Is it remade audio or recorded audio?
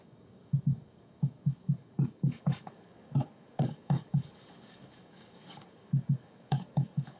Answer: remade